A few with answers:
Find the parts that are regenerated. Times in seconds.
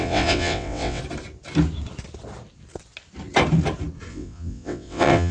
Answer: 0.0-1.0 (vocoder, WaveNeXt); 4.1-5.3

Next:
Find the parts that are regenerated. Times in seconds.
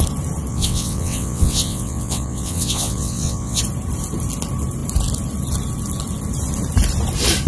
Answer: 0.5-3.6 (vocoder, WaveNeXt)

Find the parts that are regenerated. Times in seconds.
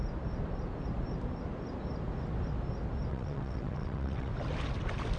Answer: 3.1-4.3 (vocoder, WaveNeXt)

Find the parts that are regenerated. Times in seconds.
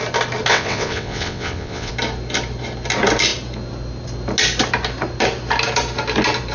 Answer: 0.5-1.9 (vocoder, WaveNeXt)